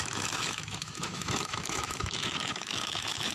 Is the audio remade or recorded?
remade